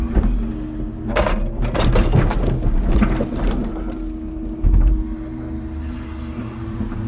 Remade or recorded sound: recorded